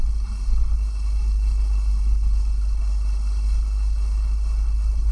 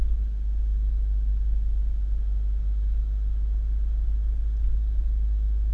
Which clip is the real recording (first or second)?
second